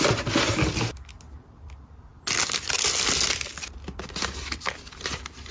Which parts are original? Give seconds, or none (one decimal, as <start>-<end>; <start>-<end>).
0.0-5.5

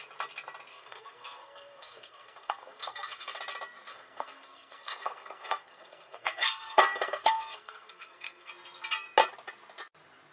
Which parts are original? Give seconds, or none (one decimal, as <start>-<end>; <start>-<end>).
0.0-0.7; 3.4-3.9; 8.5-10.3

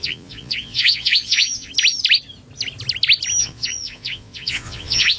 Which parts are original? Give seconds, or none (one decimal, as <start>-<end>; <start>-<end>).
1.7-3.4

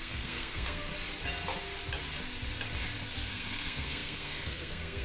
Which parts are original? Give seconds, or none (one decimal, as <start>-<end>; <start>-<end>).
0.9-3.3

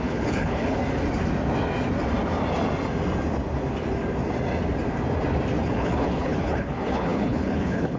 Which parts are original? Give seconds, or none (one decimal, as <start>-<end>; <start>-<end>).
0.8-5.6